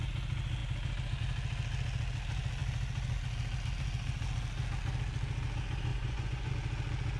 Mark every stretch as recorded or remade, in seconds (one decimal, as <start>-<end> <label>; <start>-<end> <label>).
0.0-5.9 recorded; 5.9-6.5 remade; 6.5-7.2 recorded